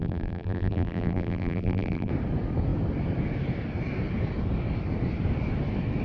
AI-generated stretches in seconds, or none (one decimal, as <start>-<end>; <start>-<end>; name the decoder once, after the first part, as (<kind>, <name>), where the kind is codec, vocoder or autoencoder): 0.0-2.1 (vocoder, BigVGAN v2)